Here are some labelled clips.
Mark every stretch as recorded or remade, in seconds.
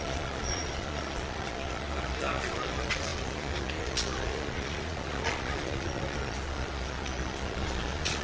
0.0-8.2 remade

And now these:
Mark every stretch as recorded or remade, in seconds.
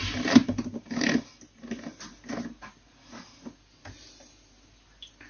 0.0-5.3 recorded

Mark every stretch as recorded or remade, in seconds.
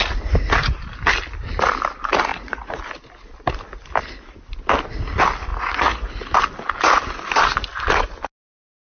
0.0-2.3 recorded; 2.3-2.8 remade; 2.8-5.5 recorded; 5.5-6.1 remade; 6.1-9.0 recorded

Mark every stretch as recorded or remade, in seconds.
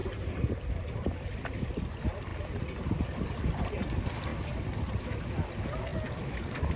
0.0-1.7 remade; 1.7-2.3 recorded; 2.3-3.4 remade; 3.4-5.9 recorded; 5.9-6.8 remade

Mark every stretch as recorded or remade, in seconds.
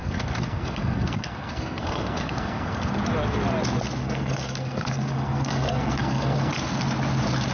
0.0-3.0 remade; 3.0-4.0 recorded; 4.0-6.5 remade; 6.5-7.5 recorded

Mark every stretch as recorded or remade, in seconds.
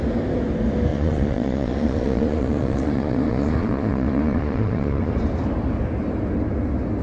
0.0-0.9 recorded; 0.9-5.1 remade; 5.1-7.0 recorded